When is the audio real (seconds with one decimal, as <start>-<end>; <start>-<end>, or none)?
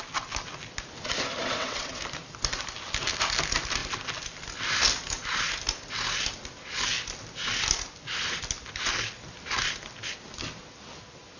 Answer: 0.0-1.4; 2.0-11.4